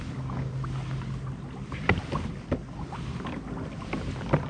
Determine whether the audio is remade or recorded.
recorded